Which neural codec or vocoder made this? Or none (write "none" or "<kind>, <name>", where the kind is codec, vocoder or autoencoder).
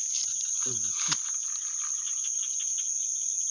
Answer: none